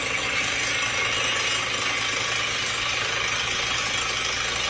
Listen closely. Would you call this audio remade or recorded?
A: recorded